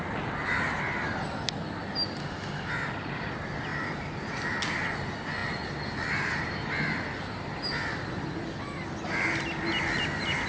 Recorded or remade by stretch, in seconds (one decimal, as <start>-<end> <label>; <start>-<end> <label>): 0.0-2.2 recorded; 2.2-2.7 remade; 2.7-10.5 recorded